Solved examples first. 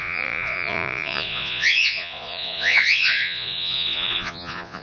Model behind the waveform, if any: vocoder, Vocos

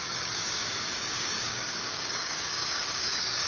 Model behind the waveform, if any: codec, DAC